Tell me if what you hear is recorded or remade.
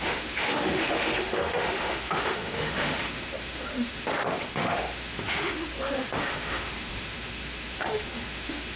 remade